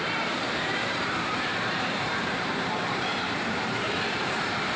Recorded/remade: remade